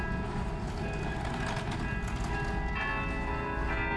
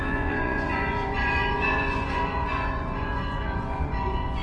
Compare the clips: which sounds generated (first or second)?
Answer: second